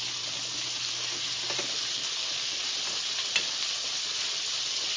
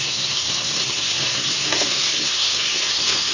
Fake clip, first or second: second